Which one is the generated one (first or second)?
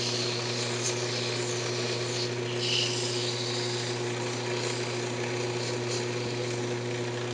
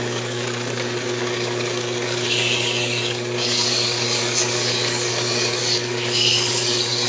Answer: second